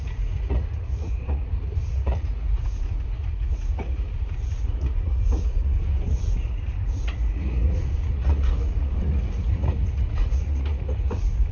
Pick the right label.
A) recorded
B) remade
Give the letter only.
B